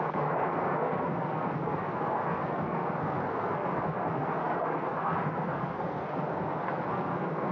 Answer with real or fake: fake